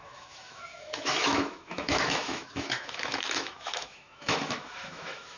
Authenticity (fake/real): fake